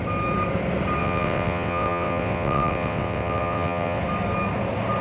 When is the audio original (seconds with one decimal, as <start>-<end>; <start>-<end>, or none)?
0.0-1.0; 4.0-5.0